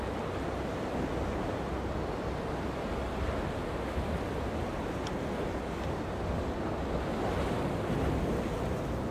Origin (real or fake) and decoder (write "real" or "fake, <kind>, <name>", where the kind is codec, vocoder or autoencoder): real